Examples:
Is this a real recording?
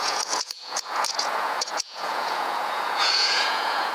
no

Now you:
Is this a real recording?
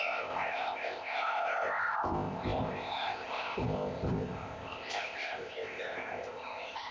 no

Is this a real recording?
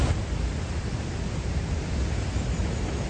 yes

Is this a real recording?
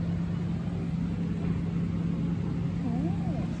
yes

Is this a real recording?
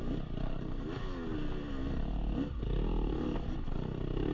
yes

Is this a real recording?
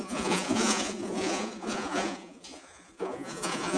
no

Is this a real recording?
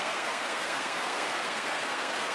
no